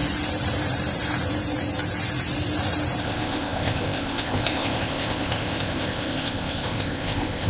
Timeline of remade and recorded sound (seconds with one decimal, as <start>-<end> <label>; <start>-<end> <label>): 0.0-3.0 recorded; 3.0-7.5 remade